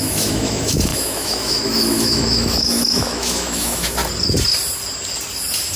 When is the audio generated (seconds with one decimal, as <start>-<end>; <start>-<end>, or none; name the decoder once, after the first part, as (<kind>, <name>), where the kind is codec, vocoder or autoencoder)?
0.0-4.0 (autoencoder, DAC-VAE)